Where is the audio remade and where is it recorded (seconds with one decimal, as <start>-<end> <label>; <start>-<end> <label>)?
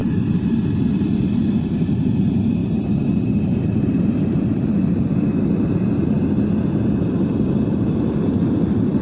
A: 0.0-4.8 remade; 4.8-7.2 recorded; 7.2-9.0 remade